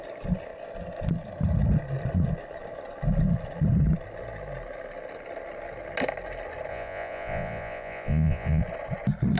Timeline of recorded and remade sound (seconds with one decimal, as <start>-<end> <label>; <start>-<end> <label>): 0.0-6.7 recorded; 6.7-8.6 remade; 8.6-9.4 recorded